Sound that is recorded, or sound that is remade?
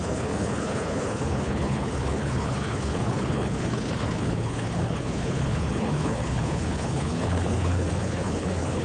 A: remade